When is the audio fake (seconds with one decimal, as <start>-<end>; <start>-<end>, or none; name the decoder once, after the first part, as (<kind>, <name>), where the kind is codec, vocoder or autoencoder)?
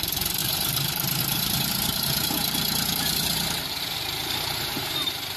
0.0-5.4 (vocoder, BigVGAN v2)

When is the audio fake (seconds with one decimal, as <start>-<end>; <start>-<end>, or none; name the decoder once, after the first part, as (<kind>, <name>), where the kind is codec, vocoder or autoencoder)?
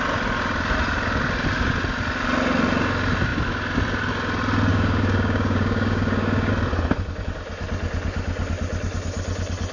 4.7-6.5 (codec, DAC)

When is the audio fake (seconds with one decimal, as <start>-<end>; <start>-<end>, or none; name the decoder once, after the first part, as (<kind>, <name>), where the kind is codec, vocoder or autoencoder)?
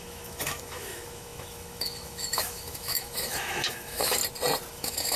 0.0-4.2 (autoencoder, DAC-VAE); 4.7-5.2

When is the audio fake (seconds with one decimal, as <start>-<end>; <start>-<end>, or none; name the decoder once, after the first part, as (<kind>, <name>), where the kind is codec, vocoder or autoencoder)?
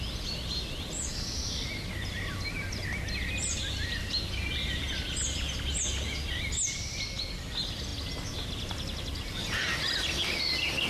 none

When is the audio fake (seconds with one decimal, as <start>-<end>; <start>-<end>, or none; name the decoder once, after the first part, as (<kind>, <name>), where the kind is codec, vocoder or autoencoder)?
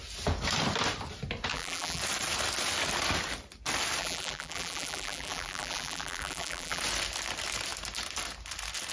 1.5-2.0 (vocoder, BigVGAN v2); 4.0-6.8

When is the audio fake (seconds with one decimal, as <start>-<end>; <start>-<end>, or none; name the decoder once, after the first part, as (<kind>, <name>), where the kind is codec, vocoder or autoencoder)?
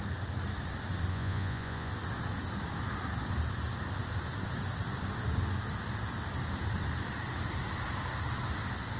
1.1-1.9 (vocoder, Vocos)